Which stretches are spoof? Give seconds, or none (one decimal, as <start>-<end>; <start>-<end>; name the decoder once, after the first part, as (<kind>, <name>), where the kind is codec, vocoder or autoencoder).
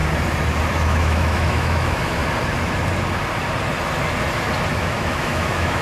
0.7-2.2 (autoencoder, DAC-VAE); 4.7-5.8